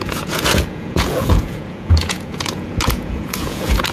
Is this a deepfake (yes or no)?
yes